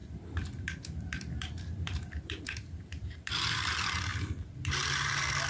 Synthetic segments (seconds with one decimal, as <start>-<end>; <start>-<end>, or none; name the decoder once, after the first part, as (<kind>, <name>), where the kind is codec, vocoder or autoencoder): 0.0-3.3 (vocoder, BigVGAN v2); 4.1-4.7